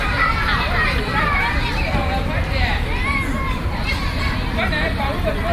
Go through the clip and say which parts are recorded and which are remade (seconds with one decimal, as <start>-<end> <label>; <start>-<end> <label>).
0.0-4.0 remade; 4.0-4.7 recorded; 4.7-5.5 remade

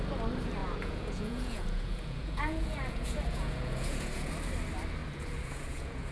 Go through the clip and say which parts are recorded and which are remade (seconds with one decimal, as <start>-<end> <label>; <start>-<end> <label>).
0.0-0.6 recorded; 0.6-4.3 remade; 4.3-5.0 recorded; 5.0-6.1 remade